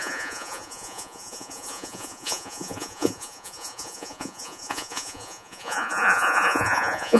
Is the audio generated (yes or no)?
yes